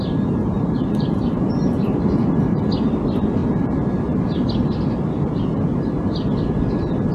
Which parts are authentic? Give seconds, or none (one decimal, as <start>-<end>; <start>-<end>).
0.0-0.4; 2.6-7.1